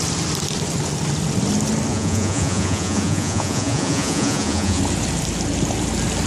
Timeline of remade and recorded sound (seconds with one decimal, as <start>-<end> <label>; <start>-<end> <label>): 0.0-1.9 recorded; 1.9-4.8 remade; 4.8-6.3 recorded